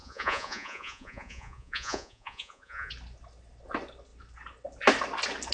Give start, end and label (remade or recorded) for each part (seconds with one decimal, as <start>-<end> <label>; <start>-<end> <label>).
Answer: 0.0-2.9 remade; 2.9-5.5 recorded